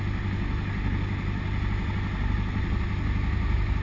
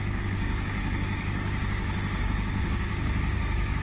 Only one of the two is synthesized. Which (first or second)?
second